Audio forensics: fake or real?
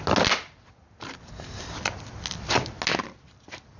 real